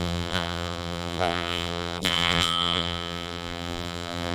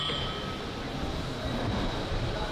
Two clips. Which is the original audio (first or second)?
second